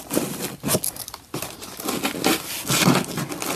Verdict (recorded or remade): recorded